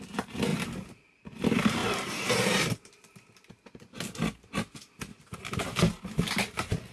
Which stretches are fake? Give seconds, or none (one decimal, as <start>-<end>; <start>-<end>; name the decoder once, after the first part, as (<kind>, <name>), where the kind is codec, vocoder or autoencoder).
1.8-2.9 (vocoder, BigVGAN v2); 5.1-5.6